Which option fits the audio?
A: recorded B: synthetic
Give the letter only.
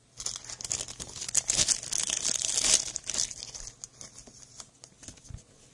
A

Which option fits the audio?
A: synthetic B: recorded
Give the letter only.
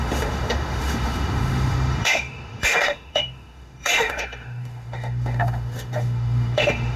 A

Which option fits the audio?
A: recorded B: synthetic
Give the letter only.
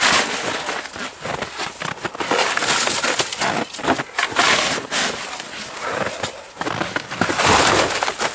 A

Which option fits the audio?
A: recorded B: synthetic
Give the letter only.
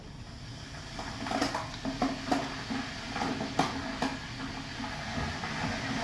A